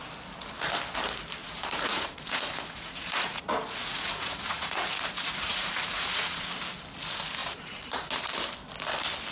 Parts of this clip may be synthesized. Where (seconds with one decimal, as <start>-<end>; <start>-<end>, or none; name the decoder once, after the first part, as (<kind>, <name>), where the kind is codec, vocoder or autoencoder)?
1.4-6.5 (vocoder, Vocos); 7.4-8.3